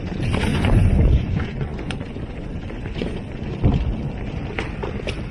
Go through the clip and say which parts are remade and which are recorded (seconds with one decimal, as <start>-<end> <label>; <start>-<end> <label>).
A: 0.0-0.5 recorded; 0.5-3.5 remade; 3.5-5.3 recorded